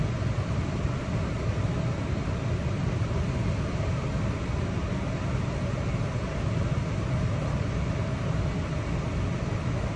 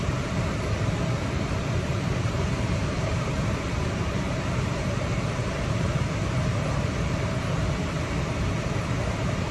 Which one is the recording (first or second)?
first